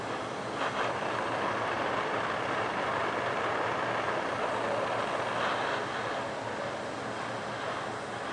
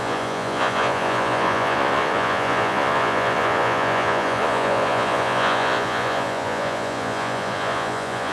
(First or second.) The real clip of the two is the first